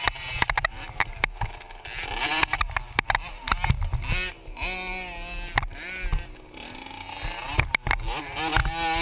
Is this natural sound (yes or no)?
yes